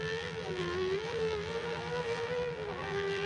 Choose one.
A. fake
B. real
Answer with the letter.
A